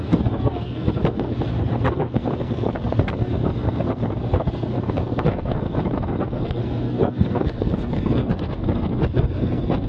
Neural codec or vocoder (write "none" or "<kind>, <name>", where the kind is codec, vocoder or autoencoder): codec, SNAC